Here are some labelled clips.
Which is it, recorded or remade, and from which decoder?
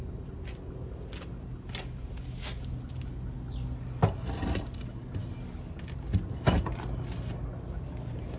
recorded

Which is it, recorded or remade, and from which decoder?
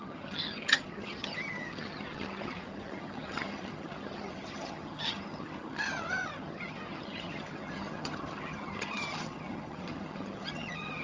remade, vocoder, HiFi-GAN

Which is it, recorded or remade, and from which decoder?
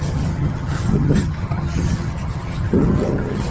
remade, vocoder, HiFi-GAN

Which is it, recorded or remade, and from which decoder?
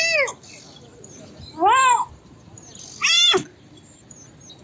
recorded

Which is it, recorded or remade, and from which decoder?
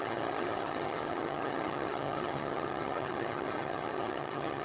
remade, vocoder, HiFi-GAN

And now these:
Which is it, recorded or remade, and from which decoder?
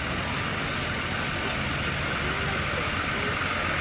recorded